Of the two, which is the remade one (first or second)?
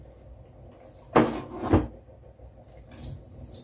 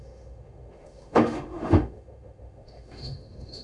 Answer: second